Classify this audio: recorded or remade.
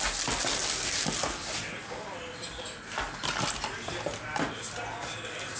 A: recorded